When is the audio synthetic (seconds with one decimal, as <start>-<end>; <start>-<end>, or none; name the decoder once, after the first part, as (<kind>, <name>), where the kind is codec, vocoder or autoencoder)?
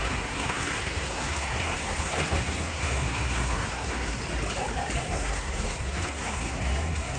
0.0-4.2 (codec, SNAC); 5.0-7.2